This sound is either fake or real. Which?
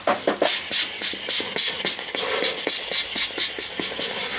real